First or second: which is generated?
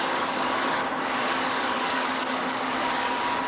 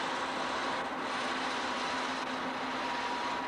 first